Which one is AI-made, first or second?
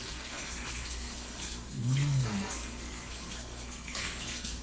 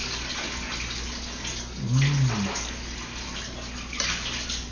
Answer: first